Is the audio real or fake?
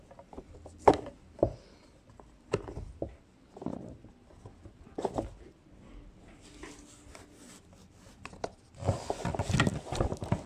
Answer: real